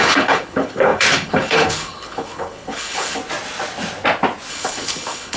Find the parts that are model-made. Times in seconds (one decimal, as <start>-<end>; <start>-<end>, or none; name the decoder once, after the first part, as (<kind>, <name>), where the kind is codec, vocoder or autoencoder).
0.0-3.2 (codec, HILCodec); 4.5-5.4